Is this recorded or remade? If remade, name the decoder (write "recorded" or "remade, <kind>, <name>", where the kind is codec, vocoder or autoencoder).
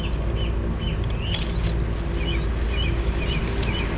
recorded